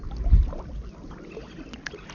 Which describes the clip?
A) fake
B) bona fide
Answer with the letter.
B